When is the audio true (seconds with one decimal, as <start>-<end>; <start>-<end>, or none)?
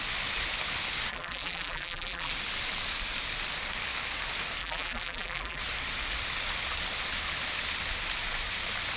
0.0-1.1; 2.3-4.6; 5.6-9.0